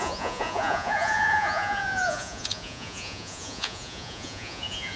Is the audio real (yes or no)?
no